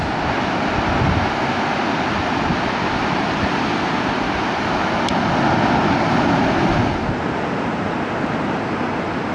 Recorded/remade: recorded